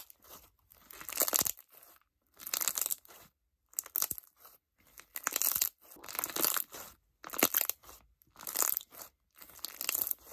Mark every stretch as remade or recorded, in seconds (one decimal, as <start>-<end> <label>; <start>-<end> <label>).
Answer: 0.0-10.3 recorded